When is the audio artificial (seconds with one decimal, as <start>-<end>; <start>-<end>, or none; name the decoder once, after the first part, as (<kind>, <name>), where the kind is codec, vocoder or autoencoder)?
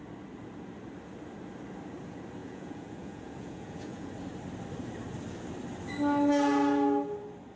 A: 2.4-4.1 (vocoder, Vocos)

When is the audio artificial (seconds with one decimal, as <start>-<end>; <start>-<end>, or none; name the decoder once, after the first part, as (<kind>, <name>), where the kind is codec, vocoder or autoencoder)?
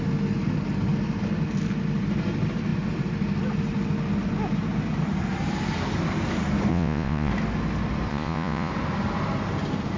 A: 6.7-7.3 (vocoder, Vocos); 8.1-8.7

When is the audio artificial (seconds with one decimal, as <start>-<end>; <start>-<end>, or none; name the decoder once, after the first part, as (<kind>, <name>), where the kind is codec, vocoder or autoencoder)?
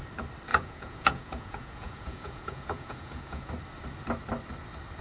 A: 0.5-3.5 (vocoder, Vocos)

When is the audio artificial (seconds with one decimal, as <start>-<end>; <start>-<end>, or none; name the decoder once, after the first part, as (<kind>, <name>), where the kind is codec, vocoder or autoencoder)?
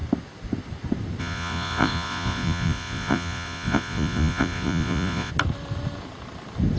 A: 1.2-5.3 (vocoder, Vocos)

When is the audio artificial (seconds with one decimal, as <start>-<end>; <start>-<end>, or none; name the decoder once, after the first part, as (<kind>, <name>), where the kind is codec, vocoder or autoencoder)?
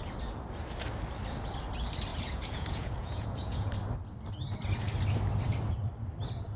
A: 2.1-3.7 (vocoder, Vocos)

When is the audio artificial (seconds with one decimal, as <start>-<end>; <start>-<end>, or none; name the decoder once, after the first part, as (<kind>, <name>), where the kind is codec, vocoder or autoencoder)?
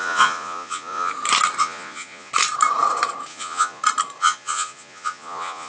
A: 0.0-1.1 (vocoder, Vocos); 1.6-2.3; 3.3-3.8; 4.2-5.7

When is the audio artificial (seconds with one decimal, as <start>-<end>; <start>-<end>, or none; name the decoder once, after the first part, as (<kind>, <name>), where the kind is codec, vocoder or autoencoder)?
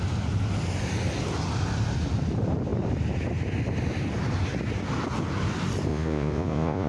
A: 5.9-6.9 (vocoder, Vocos)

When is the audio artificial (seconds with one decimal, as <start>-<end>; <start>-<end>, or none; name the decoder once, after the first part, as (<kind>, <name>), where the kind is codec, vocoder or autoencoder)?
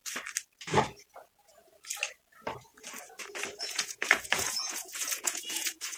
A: 3.6-6.0 (vocoder, Vocos)